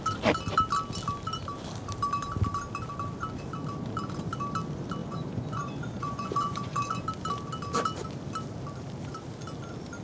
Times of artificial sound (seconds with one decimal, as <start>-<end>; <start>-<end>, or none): 5.0-7.0